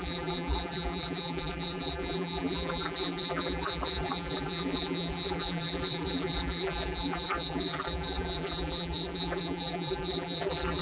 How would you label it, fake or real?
fake